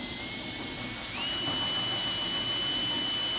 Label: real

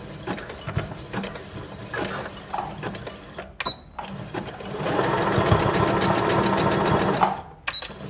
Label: real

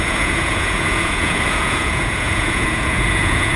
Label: fake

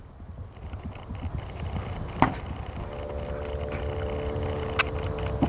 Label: real